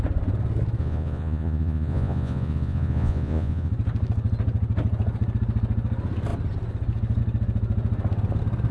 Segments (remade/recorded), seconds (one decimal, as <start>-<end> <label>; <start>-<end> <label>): 0.0-0.8 recorded; 0.8-3.7 remade; 3.7-8.7 recorded